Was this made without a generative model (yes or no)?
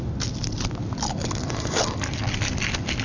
yes